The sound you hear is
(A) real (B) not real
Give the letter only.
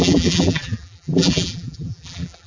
B